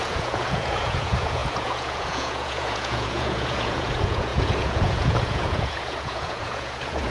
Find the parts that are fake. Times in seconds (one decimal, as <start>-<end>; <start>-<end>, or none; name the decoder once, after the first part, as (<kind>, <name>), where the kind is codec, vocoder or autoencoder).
0.0-7.1 (vocoder, Vocos)